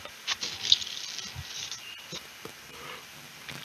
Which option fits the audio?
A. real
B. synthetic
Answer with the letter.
A